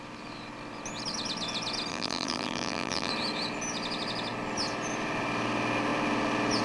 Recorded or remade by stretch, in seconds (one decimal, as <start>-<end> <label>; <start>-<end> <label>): 0.0-1.9 recorded; 1.9-3.1 remade; 3.1-6.6 recorded